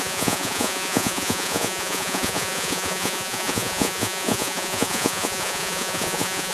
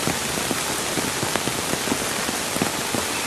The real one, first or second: second